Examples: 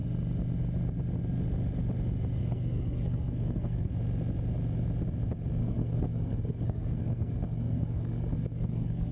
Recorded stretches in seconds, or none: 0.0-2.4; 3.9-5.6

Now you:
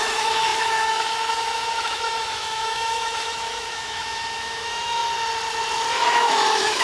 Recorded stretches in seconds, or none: 5.0-5.9

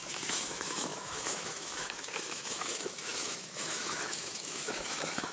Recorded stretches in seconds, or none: none

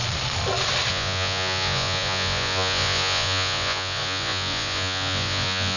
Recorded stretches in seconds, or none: 0.0-0.9

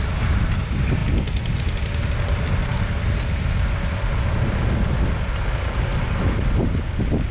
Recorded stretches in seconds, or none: 0.0-7.3

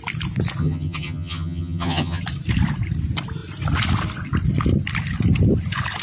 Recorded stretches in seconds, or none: 0.0-0.6; 2.2-6.0